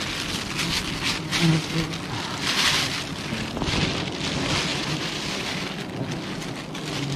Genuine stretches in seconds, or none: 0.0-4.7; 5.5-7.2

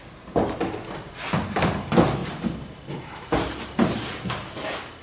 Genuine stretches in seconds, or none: 0.0-2.2; 4.3-5.0

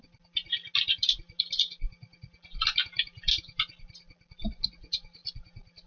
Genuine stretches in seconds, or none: 0.0-5.9

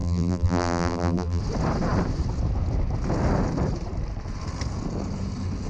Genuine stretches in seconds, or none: 1.4-5.7